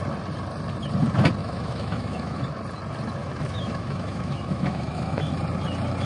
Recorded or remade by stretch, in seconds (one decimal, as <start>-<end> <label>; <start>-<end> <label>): 0.0-1.4 recorded; 1.4-2.4 remade; 2.4-3.2 recorded; 3.2-5.2 remade; 5.2-6.1 recorded